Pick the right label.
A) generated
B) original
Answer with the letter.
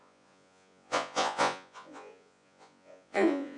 A